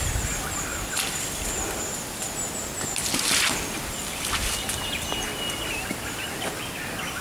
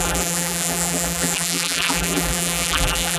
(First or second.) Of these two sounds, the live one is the first